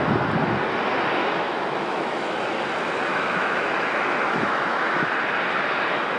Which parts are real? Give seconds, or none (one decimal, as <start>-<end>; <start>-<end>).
0.0-1.2; 2.5-3.1; 5.0-6.2